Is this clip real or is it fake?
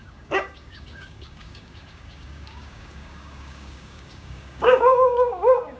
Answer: fake